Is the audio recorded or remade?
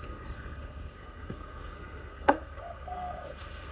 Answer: remade